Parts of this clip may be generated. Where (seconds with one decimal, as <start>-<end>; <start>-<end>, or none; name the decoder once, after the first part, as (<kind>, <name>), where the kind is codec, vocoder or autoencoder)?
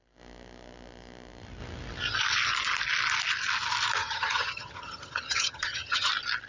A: 4.0-6.1 (vocoder, HiFi-GAN)